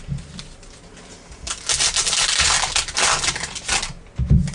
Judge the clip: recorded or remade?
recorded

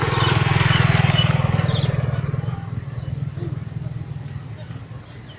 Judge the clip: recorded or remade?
recorded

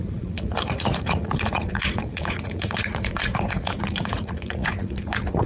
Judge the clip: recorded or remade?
remade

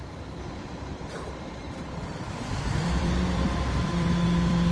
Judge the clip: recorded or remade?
remade